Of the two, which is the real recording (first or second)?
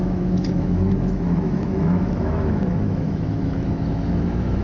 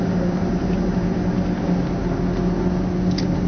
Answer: second